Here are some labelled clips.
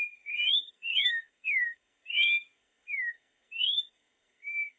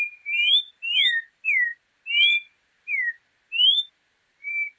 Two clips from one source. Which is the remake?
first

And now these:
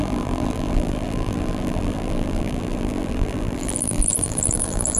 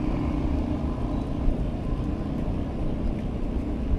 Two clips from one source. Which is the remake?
first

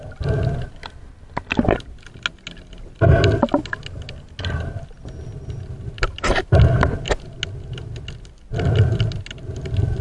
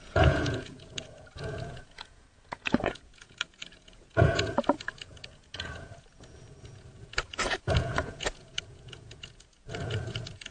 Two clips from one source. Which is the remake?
second